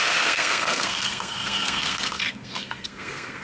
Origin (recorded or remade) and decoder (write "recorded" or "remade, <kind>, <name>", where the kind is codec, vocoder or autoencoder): remade, codec, SNAC